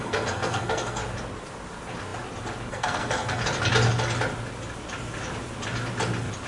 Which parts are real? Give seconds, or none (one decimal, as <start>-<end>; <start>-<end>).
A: 1.0-2.7; 3.4-6.5